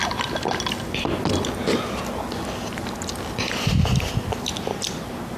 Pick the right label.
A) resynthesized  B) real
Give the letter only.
B